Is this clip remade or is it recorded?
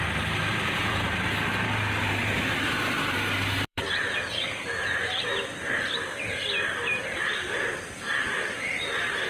remade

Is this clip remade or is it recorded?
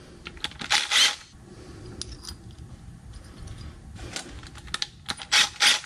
recorded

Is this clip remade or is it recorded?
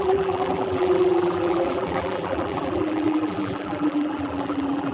remade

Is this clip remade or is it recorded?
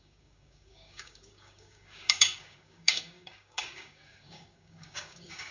remade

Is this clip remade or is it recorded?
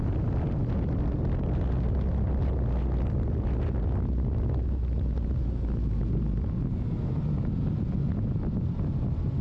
recorded